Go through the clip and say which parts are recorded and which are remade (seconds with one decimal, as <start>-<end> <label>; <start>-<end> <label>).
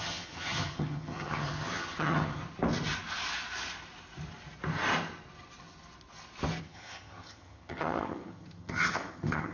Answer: 0.0-2.4 remade; 2.4-6.6 recorded; 6.6-9.5 remade